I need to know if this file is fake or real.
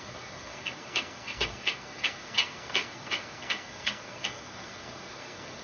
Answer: fake